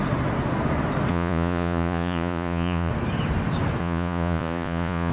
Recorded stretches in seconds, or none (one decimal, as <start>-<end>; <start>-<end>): 0.0-1.1; 2.9-3.8